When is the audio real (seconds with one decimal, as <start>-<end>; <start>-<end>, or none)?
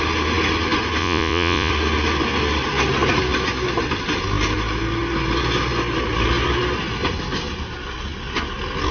0.0-1.0; 1.7-8.9